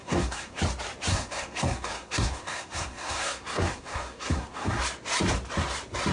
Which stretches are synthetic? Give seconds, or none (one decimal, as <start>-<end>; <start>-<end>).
0.0-0.6; 1.1-4.8